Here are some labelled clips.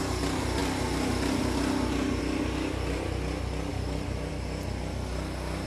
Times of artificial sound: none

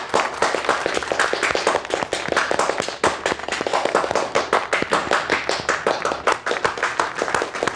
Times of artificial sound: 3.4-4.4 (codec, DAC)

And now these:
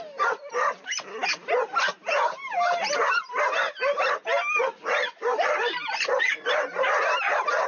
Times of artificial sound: none

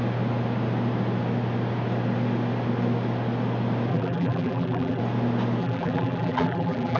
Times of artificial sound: 3.9-5.0 (vocoder, BigVGAN v2); 5.6-7.0

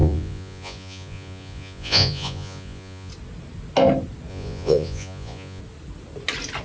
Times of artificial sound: 0.0-3.1 (vocoder, Vocos); 4.3-5.6

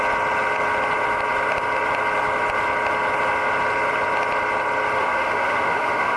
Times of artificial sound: 5.0-6.2 (autoencoder, DAC-VAE)

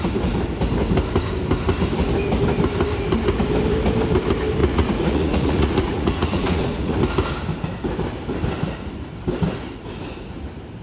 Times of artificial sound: 4.6-7.0 (vocoder, Vocos)

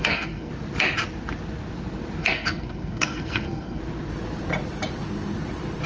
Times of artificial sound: 0.0-0.5 (codec, SNAC); 2.2-3.8